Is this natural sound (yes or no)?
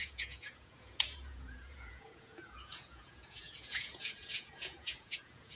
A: no